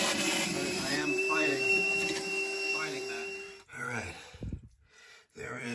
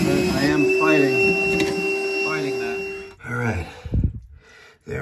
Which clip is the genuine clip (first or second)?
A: second